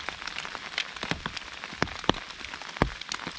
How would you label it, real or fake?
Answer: real